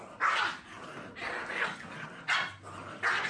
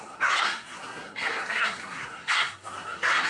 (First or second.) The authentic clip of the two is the first